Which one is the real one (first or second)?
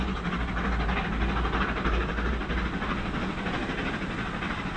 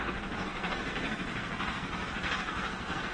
first